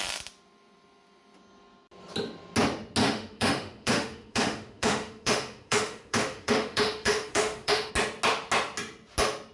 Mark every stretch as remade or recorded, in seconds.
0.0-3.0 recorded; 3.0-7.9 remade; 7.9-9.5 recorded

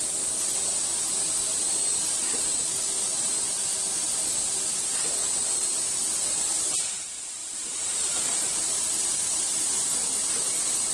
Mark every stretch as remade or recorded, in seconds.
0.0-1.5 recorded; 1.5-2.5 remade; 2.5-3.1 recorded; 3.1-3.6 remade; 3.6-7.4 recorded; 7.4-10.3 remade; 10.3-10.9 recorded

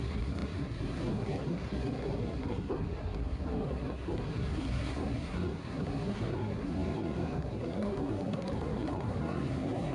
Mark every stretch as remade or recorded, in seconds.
0.0-9.9 remade